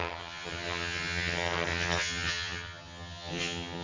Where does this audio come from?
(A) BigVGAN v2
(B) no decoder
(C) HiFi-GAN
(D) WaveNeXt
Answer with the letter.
C